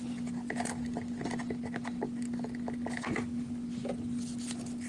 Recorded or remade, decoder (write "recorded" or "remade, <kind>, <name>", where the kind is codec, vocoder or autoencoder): recorded